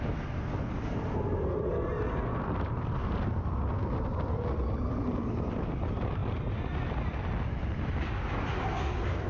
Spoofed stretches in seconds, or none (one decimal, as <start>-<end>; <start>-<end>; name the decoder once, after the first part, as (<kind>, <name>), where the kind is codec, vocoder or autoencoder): none